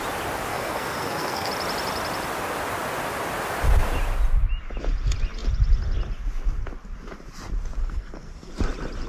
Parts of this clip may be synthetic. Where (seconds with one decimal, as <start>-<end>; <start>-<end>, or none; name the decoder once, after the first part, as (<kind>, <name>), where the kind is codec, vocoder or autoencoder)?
0.5-1.5 (codec, SNAC); 7.8-8.5